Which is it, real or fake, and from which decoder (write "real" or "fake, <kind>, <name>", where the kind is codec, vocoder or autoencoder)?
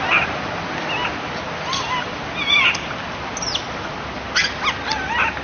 real